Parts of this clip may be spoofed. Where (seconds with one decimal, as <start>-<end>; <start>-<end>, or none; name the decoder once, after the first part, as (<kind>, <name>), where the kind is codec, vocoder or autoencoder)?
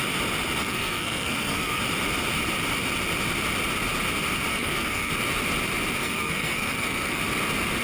0.6-1.8 (codec, SNAC); 4.5-5.1; 6.0-7.2